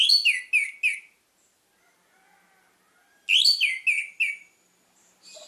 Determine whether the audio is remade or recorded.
recorded